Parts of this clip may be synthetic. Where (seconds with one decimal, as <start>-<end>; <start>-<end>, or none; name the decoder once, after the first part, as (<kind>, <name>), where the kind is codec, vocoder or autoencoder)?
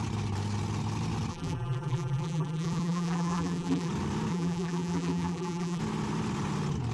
1.3-3.9 (vocoder, BigVGAN v2); 4.3-5.8